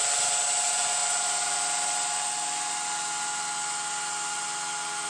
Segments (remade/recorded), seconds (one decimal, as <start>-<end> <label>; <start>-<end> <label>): 0.0-5.1 recorded